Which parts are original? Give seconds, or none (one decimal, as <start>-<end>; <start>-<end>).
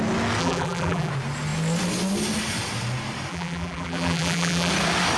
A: 0.0-0.4; 1.1-3.3; 4.7-5.2